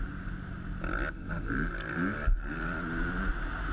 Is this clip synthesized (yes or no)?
no